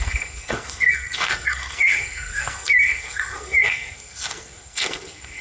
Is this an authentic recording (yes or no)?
no